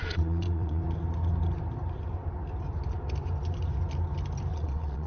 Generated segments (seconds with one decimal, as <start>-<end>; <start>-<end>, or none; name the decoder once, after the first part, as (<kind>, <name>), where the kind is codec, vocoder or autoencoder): 0.0-0.8 (vocoder, Vocos); 4.5-5.1